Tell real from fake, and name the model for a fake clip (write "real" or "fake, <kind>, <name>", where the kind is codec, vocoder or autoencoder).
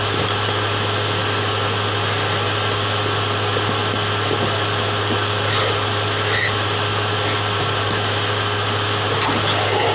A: real